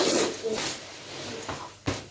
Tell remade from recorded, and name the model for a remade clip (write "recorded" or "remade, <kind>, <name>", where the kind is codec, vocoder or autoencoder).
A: recorded